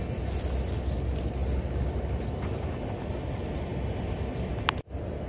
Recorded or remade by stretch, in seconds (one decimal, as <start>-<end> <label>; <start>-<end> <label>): 0.0-5.3 recorded